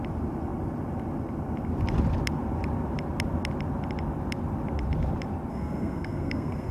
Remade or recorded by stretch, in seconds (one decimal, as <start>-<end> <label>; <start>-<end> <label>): 0.0-5.5 recorded; 5.5-6.7 remade